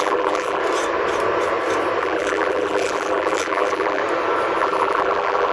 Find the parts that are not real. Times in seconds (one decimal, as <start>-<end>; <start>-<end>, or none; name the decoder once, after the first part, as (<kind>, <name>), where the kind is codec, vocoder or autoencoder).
0.0-0.6 (vocoder, BigVGAN v2); 2.0-4.0; 4.6-5.5